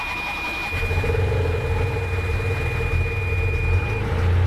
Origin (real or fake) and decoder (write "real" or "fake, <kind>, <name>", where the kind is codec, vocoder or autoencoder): real